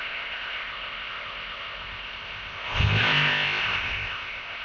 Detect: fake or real fake